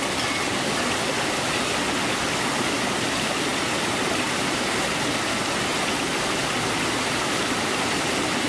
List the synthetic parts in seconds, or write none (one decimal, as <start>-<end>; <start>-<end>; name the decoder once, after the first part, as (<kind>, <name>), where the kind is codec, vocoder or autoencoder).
none